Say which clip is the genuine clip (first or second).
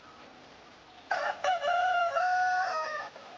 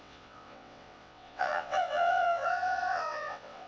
first